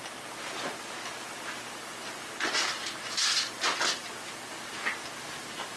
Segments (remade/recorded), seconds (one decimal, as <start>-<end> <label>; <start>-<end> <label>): 0.0-5.8 recorded